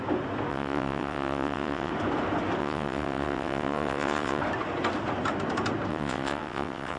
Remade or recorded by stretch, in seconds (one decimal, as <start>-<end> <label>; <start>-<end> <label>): 0.0-0.5 recorded; 0.5-1.9 remade; 1.9-2.6 recorded; 2.6-4.4 remade; 4.4-5.9 recorded; 5.9-7.0 remade